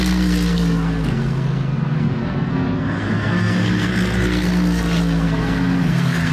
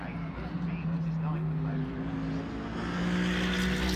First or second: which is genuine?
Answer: second